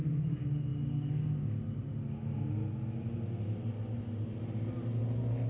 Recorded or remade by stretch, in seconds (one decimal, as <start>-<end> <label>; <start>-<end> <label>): 0.0-5.5 recorded